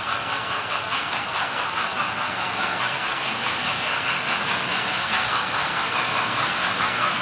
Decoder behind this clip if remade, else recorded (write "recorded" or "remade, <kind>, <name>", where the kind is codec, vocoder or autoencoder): remade, codec, SNAC